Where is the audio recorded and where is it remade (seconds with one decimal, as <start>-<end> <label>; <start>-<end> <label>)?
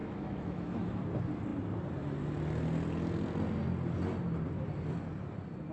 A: 0.0-1.0 remade; 1.0-5.7 recorded